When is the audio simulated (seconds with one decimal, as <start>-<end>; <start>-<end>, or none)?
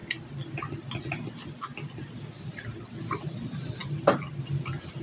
none